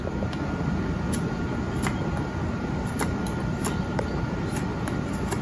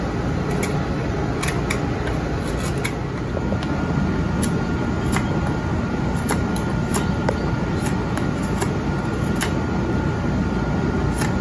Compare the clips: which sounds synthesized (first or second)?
first